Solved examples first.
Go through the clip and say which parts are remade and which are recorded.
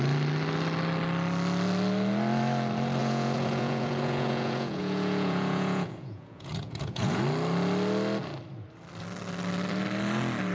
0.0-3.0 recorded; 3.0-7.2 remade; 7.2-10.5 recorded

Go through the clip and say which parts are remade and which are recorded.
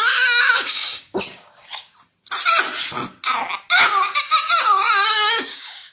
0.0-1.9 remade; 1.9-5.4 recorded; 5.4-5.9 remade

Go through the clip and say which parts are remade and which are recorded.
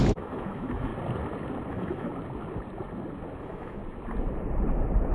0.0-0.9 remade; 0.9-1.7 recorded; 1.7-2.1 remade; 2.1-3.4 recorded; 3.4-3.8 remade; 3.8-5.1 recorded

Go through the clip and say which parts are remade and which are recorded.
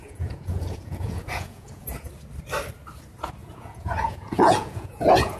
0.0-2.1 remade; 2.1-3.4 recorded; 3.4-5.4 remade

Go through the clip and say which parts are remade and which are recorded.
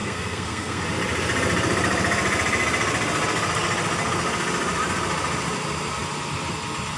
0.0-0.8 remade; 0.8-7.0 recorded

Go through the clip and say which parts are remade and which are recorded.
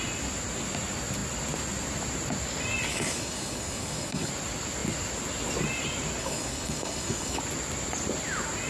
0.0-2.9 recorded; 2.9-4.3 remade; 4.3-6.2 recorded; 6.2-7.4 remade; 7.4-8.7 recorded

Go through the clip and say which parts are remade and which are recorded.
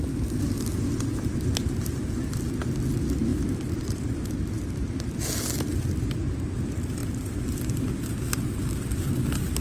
0.0-3.3 recorded; 3.3-3.9 remade; 3.9-7.0 recorded; 7.0-8.1 remade; 8.1-9.6 recorded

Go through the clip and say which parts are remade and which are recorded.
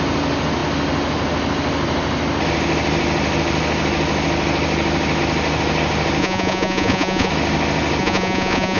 0.0-6.2 recorded; 6.2-7.3 remade; 7.3-8.0 recorded; 8.0-8.8 remade